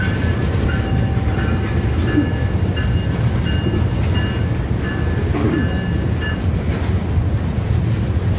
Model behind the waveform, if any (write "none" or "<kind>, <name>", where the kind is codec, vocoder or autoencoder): none